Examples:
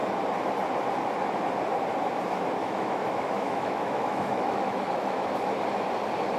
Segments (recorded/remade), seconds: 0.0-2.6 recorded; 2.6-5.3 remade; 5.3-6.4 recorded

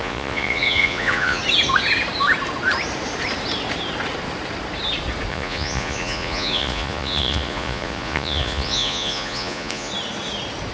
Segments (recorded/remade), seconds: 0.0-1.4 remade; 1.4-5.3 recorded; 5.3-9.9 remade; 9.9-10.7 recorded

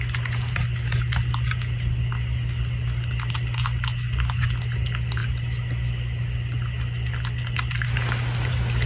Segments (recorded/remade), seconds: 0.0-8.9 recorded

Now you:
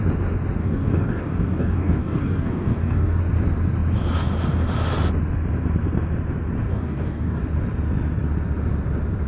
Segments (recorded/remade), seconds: 0.0-0.6 recorded; 0.6-3.2 remade; 3.2-6.7 recorded; 6.7-7.4 remade; 7.4-9.3 recorded